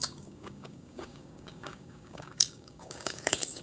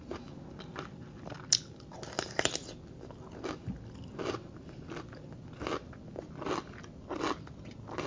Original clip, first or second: second